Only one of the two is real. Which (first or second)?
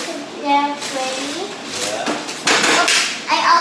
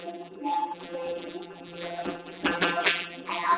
first